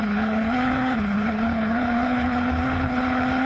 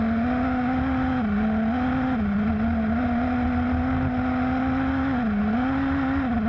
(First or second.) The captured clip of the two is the second